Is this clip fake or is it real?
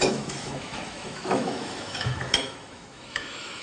fake